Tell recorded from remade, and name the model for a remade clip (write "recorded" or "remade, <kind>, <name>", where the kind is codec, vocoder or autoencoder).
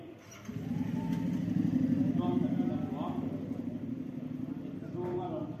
recorded